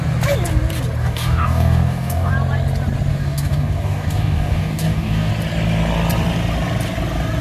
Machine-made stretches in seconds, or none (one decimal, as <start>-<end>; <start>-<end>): 1.0-2.3; 3.1-5.3